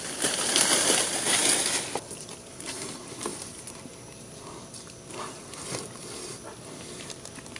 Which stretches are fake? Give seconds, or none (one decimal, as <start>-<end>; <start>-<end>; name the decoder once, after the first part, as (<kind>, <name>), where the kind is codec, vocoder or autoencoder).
0.0-1.4 (vocoder, BigVGAN v2); 2.1-3.3; 6.0-7.6